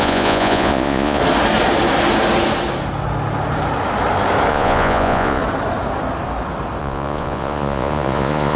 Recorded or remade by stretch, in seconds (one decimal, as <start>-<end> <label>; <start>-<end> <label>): 0.0-1.2 remade; 1.2-4.5 recorded; 4.5-5.4 remade; 5.4-6.8 recorded; 6.8-8.6 remade